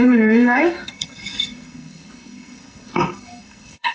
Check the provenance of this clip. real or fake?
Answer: fake